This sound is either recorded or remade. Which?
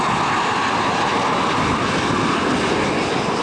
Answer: recorded